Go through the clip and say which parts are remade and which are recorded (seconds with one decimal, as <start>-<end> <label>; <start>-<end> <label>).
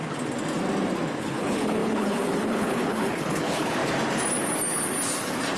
0.0-1.2 recorded; 1.2-3.8 remade; 3.8-5.6 recorded